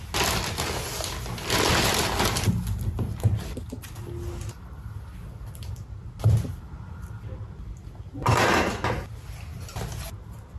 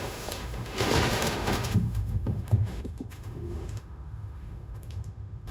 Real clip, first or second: first